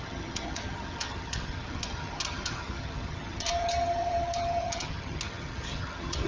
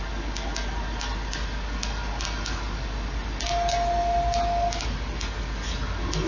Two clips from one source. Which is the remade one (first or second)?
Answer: first